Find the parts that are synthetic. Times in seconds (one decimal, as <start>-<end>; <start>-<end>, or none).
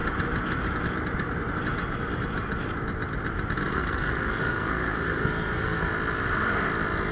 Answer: 3.7-5.9